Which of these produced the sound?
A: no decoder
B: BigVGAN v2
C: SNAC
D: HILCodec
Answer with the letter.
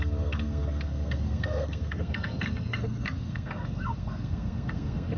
C